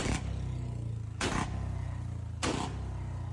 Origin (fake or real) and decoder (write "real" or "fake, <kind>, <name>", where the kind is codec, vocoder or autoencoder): real